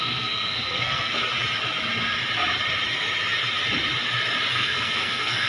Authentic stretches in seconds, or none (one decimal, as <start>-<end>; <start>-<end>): 1.2-4.5